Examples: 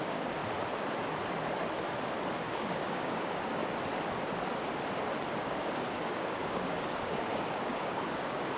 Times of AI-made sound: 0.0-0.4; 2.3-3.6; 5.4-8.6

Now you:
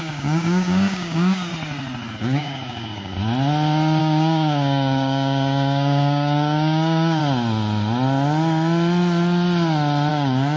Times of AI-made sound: 0.0-1.5; 2.2-3.1; 4.0-7.2; 10.1-10.6